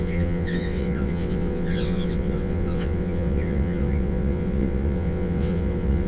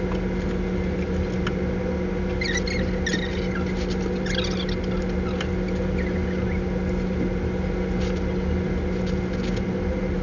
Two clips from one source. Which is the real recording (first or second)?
second